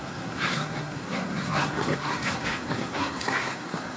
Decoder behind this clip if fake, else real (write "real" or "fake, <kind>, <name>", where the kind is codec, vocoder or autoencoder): fake, codec, SNAC